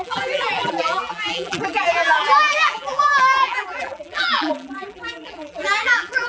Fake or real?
fake